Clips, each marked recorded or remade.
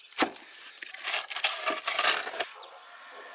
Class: recorded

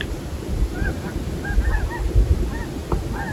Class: recorded